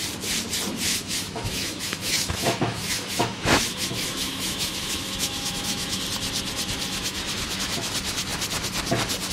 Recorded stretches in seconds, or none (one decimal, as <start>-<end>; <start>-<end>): 0.0-0.9; 6.0-6.9; 7.9-9.3